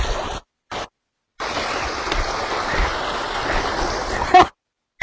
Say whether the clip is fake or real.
real